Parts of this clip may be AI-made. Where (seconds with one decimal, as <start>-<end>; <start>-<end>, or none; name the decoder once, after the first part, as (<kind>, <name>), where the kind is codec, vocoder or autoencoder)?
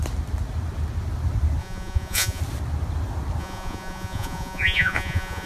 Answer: 1.6-2.4 (vocoder, Vocos); 3.4-5.5